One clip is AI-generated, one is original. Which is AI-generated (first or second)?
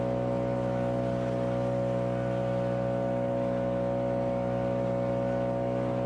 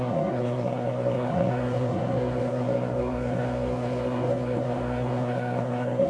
second